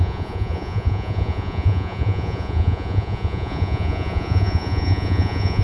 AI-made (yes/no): yes